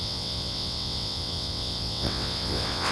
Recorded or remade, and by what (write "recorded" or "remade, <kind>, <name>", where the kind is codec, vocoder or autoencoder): remade, vocoder, WaveNeXt